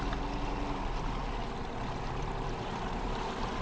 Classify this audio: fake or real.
real